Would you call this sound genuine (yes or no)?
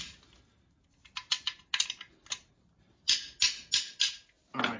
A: yes